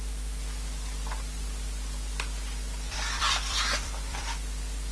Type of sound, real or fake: fake